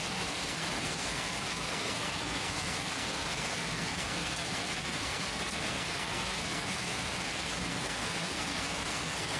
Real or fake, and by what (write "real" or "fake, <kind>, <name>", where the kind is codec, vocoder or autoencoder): fake, codec, SNAC